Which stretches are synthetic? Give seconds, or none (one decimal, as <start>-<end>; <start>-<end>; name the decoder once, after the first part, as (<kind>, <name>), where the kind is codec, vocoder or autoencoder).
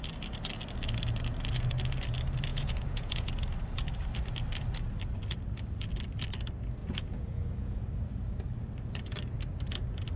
2.5-3.3 (vocoder, Vocos); 6.8-7.8